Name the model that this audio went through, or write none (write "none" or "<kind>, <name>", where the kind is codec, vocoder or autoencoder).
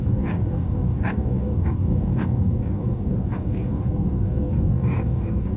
codec, DAC